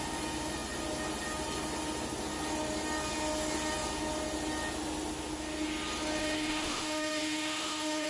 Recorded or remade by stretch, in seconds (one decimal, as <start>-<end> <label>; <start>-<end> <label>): 0.0-6.2 recorded; 6.2-8.1 remade